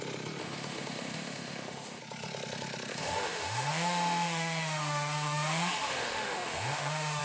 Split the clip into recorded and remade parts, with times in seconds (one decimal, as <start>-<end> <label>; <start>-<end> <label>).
0.0-0.4 recorded; 0.4-2.0 remade; 2.0-2.9 recorded; 2.9-7.2 remade